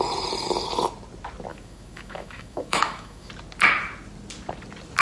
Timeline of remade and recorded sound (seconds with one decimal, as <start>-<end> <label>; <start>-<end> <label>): 0.0-1.5 recorded; 1.5-3.3 remade; 3.3-5.0 recorded